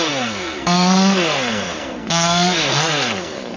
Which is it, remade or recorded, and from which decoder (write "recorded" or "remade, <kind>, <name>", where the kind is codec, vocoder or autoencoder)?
remade, codec, SNAC